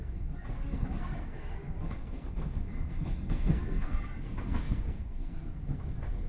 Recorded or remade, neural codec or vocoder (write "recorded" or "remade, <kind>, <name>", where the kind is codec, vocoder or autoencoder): remade, codec, SNAC